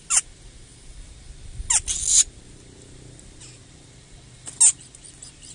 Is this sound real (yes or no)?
yes